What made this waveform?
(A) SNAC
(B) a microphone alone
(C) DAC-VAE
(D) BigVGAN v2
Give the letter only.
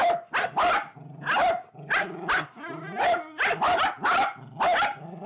B